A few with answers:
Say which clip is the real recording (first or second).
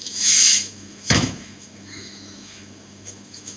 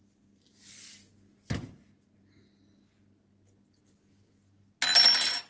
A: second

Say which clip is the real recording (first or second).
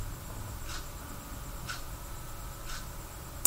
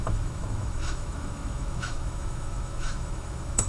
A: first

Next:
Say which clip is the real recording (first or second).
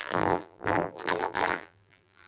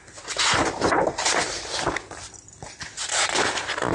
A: second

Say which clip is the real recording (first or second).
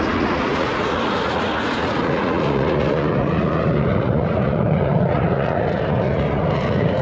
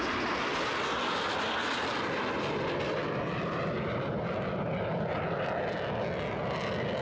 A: second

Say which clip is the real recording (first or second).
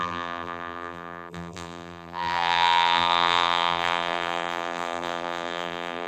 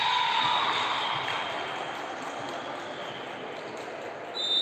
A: second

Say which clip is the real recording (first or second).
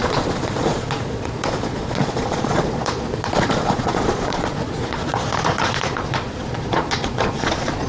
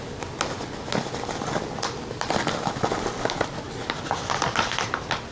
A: second